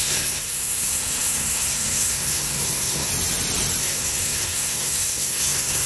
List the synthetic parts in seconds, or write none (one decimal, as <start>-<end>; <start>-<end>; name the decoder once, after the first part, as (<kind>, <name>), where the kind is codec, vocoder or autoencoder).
0.0-3.1 (codec, SNAC); 3.8-5.9